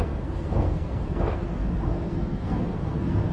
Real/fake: fake